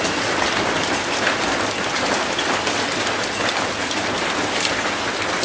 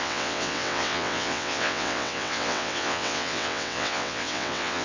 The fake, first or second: second